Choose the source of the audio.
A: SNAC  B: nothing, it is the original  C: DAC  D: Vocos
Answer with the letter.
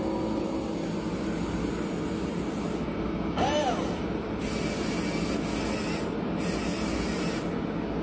B